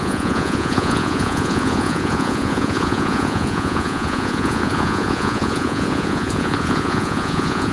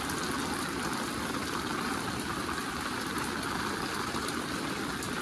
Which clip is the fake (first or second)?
first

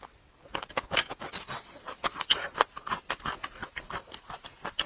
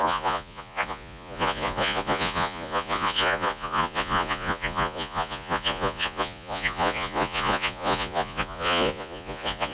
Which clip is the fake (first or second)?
second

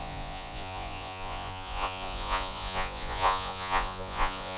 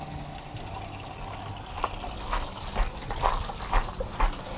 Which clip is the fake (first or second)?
first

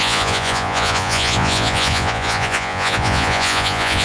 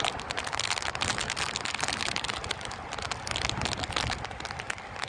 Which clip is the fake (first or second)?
first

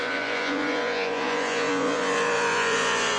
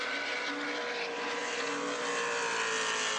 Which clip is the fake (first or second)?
first